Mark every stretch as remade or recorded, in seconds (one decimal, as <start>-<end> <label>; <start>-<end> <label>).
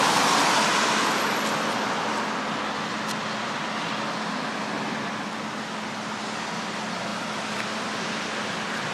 0.0-8.9 recorded